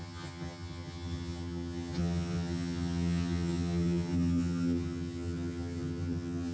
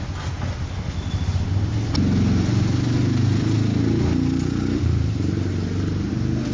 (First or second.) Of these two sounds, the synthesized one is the first